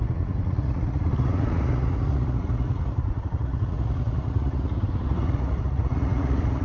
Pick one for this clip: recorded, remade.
remade